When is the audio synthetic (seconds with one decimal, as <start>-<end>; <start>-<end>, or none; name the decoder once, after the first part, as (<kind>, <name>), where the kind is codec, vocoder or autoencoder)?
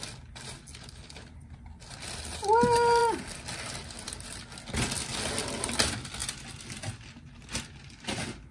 none